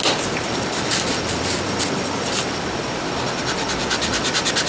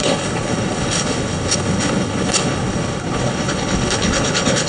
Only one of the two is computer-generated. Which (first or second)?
second